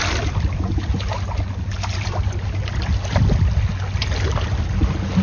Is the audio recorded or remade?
recorded